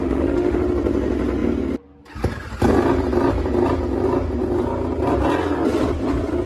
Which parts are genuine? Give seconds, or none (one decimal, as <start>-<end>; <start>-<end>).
0.6-6.5